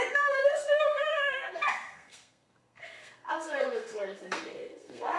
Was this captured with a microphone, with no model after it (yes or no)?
no